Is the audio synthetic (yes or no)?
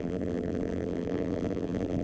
yes